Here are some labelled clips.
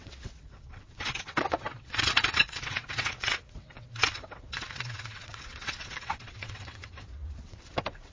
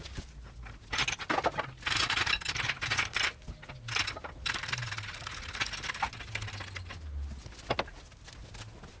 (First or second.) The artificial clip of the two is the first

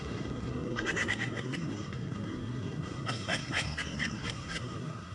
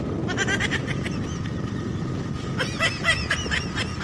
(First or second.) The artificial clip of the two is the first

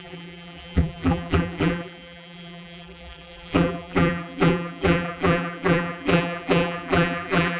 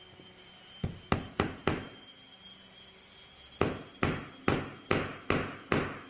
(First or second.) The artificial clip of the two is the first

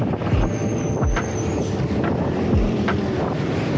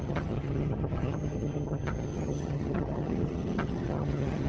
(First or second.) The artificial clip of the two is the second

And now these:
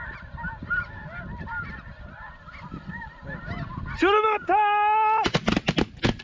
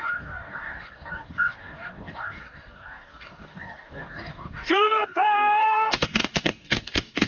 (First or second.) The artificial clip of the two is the second